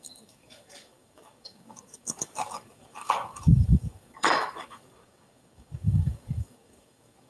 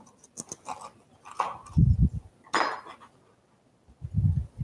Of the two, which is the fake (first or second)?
first